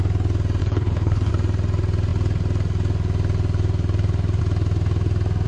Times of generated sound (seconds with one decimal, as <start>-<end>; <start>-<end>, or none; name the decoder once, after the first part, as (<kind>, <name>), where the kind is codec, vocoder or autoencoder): 0.6-1.3 (codec, HILCodec)